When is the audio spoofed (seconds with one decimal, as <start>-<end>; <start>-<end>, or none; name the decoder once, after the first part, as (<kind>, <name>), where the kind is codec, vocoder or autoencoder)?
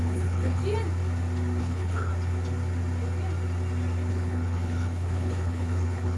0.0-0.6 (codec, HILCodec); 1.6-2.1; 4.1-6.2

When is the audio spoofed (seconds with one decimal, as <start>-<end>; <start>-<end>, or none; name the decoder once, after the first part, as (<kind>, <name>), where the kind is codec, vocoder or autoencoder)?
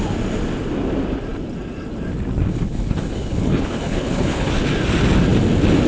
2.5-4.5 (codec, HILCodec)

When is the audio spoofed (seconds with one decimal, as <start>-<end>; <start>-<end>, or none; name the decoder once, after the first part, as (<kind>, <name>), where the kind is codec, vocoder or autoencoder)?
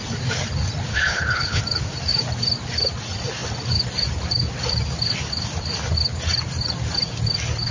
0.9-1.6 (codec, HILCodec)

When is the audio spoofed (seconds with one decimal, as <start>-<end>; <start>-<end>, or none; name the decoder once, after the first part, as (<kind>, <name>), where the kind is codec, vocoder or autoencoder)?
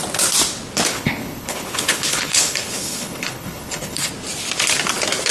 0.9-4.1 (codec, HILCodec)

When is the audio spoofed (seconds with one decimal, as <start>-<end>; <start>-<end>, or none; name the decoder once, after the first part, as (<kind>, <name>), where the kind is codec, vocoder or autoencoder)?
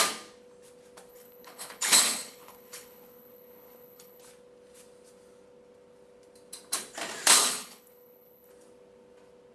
1.1-4.2 (codec, HILCodec); 7.4-8.5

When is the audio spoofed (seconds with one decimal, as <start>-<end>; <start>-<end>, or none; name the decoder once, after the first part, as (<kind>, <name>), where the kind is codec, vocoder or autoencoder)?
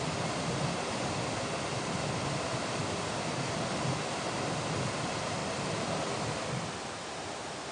none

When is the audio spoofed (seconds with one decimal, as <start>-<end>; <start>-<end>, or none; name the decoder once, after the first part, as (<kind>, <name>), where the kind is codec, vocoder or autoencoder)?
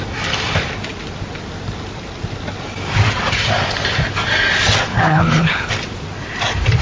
4.9-5.7 (codec, HILCodec)